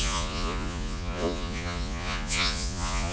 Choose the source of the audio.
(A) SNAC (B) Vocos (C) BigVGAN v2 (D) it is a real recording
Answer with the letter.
B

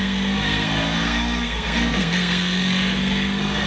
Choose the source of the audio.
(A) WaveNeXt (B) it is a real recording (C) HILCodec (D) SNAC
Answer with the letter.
D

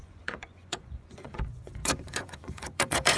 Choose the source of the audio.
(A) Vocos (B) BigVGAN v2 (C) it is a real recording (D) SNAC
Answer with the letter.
A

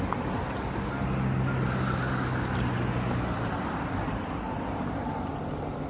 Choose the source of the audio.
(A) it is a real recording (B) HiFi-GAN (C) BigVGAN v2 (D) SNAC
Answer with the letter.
A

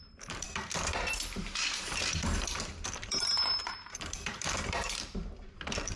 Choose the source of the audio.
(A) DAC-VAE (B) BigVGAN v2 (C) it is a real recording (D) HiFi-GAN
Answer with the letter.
B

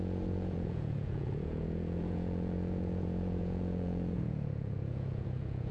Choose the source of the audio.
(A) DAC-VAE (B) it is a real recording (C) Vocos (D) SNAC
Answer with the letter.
C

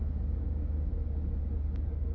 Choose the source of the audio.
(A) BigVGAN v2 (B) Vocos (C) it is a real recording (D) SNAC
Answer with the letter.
C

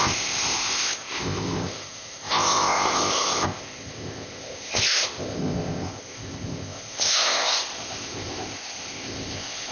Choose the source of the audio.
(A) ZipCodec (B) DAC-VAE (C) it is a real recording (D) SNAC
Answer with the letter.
A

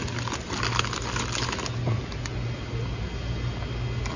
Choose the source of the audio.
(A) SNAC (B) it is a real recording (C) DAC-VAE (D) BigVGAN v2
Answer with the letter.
B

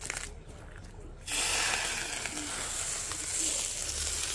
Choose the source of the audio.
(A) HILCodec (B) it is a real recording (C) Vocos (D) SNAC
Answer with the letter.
B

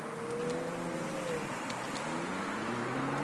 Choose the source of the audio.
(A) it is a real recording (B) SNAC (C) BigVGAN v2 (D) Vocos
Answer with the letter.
A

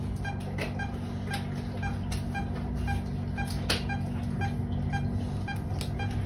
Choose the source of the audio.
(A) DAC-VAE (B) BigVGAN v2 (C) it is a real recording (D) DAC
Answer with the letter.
C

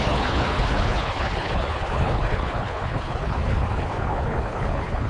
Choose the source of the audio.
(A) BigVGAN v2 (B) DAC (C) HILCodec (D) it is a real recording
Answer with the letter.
C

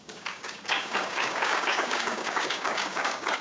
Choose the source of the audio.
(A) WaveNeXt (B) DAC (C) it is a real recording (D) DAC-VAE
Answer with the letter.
B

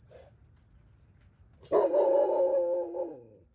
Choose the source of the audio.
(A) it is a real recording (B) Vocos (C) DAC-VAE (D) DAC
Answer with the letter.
A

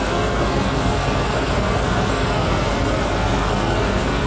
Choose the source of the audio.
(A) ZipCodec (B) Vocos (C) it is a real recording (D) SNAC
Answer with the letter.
D